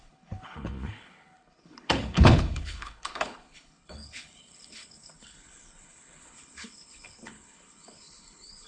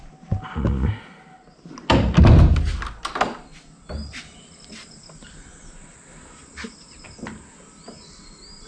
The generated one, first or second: first